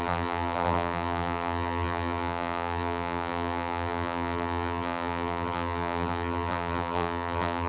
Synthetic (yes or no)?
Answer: yes